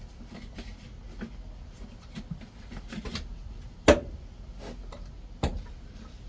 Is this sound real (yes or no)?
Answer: yes